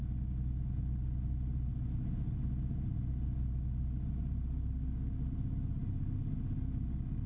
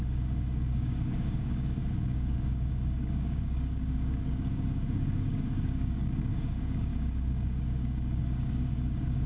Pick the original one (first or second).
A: first